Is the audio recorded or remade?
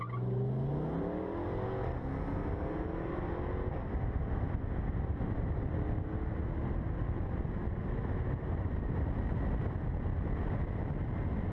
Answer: recorded